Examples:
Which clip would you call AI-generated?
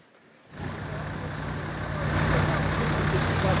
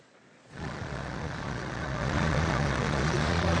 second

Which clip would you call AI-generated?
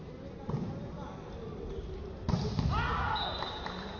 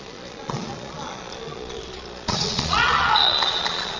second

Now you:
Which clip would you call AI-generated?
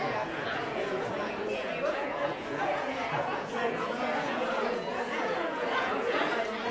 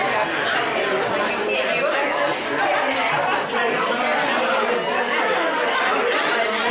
first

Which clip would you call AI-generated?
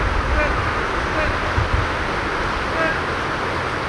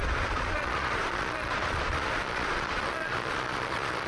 second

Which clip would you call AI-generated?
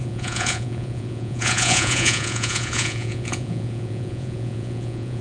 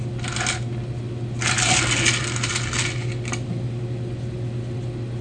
first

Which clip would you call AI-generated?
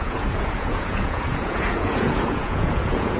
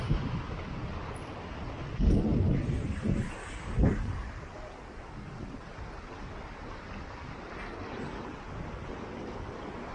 first